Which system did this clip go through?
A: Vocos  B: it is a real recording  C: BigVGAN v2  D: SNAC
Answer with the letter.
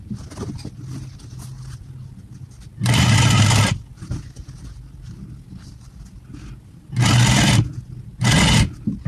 B